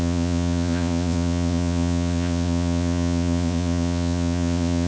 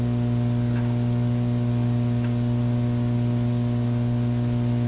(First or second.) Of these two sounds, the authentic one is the second